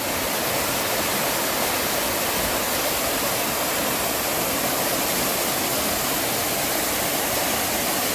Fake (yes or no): no